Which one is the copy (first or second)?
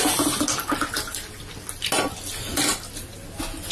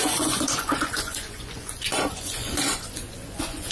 second